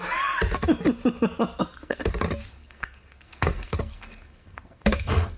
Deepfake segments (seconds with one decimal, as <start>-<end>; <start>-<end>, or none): 1.6-2.1; 2.6-5.4